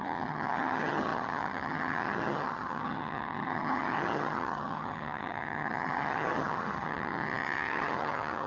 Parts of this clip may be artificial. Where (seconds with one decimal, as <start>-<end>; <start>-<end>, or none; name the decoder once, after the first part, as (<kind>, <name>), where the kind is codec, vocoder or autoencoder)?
0.0-8.5 (vocoder, HiFi-GAN)